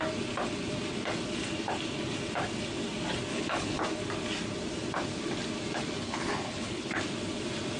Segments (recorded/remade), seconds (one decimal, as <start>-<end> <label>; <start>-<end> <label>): 0.0-3.3 recorded; 3.3-3.8 remade; 3.8-6.0 recorded; 6.0-7.0 remade; 7.0-7.8 recorded